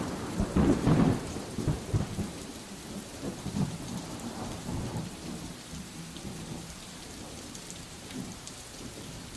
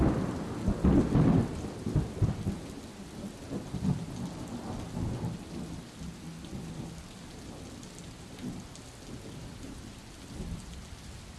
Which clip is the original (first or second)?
second